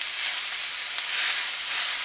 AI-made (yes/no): no